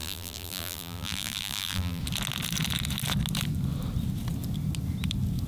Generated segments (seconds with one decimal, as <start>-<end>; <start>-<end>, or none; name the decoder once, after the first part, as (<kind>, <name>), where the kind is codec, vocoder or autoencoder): 0.0-2.0 (vocoder, BigVGAN v2)